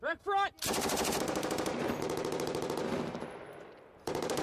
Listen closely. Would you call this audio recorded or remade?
recorded